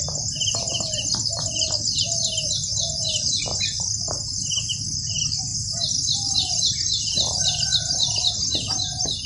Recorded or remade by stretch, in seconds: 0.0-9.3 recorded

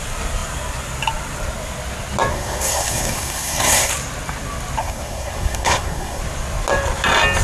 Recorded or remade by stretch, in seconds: 0.0-2.3 recorded; 2.3-3.9 remade; 3.9-4.8 recorded; 4.8-6.2 remade; 6.2-7.4 recorded